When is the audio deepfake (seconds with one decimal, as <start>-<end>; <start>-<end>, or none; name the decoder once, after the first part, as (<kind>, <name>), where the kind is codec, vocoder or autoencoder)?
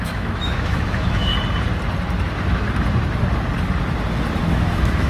0.0-1.3 (autoencoder, DAC-VAE); 4.4-5.1